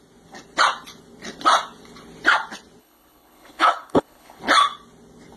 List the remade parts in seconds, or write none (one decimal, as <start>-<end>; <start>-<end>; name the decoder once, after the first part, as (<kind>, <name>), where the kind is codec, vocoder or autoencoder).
2.8-4.4 (codec, HILCodec)